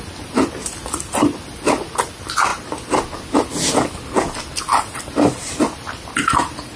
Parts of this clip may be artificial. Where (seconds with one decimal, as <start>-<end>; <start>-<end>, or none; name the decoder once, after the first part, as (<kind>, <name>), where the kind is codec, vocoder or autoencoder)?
none